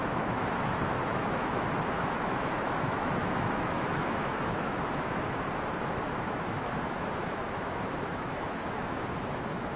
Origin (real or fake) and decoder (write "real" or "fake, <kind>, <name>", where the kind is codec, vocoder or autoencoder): fake, autoencoder, DAC-VAE